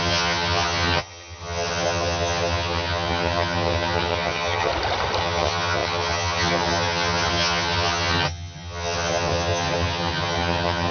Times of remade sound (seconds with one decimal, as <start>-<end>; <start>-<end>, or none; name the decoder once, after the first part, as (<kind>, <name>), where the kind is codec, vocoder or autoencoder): 0.0-4.7 (vocoder, HiFi-GAN); 5.2-10.9